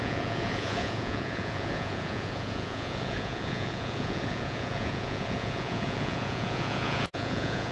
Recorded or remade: remade